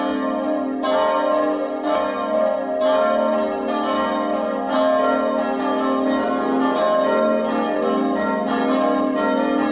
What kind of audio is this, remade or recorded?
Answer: recorded